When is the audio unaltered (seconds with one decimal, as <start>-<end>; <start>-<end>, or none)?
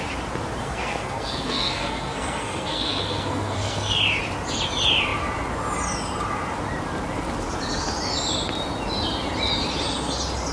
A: 0.0-0.6; 4.0-10.5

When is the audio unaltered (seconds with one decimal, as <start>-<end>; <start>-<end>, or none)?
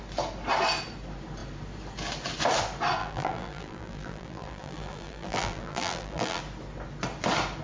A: 0.0-3.0; 6.4-7.6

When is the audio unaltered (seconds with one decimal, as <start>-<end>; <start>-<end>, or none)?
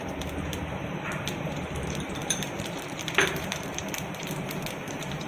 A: none